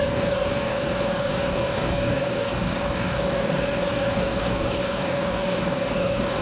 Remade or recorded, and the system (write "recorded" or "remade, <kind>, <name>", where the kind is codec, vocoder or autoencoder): remade, codec, DAC